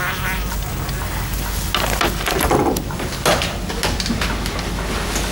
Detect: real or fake real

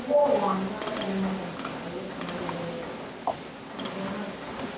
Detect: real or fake real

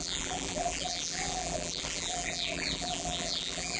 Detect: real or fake fake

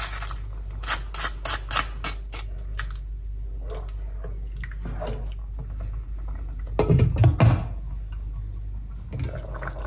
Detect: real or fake real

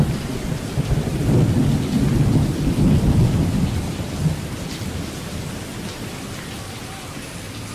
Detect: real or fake real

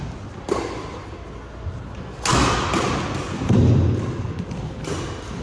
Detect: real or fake real